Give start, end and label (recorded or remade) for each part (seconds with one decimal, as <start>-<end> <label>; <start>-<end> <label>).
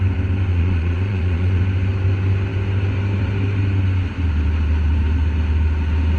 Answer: 0.0-0.5 recorded; 0.5-1.6 remade; 1.6-6.2 recorded